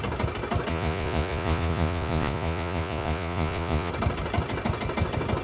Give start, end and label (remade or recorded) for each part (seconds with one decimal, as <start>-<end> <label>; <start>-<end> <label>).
0.0-0.7 recorded; 0.7-3.9 remade; 3.9-5.4 recorded